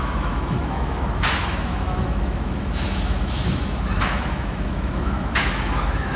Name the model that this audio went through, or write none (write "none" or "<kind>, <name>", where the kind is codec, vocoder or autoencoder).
autoencoder, DAC-VAE